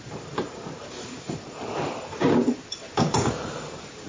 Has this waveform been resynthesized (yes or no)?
yes